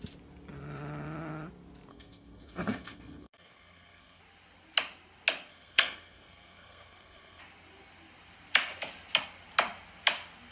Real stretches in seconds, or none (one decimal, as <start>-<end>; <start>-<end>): 0.0-1.9; 4.2-5.5; 7.4-10.5